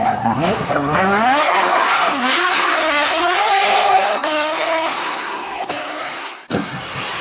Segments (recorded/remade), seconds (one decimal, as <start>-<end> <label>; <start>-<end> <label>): 0.0-7.2 remade